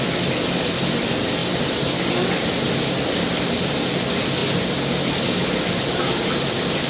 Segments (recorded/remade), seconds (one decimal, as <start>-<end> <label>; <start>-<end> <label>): 0.0-6.9 recorded

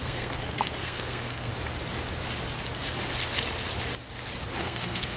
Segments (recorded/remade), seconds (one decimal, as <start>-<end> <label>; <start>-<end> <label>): 0.0-1.5 remade; 1.5-4.6 recorded; 4.6-5.2 remade

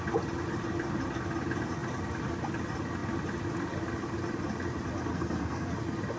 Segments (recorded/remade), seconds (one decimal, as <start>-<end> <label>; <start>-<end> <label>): 0.0-5.1 recorded; 5.1-5.7 remade; 5.7-6.2 recorded

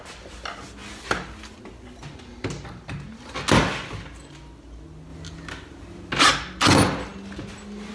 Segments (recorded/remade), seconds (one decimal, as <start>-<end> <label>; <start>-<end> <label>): 0.0-7.9 recorded